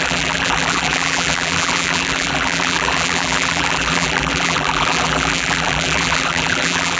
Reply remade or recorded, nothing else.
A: remade